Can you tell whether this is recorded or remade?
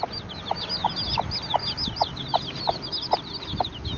recorded